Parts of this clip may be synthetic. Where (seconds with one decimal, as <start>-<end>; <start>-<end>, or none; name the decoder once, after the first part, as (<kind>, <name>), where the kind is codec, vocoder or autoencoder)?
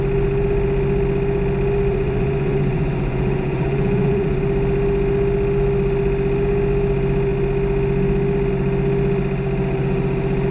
1.9-4.4 (vocoder, Vocos)